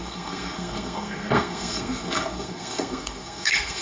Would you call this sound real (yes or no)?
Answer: no